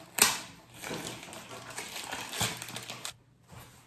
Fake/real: real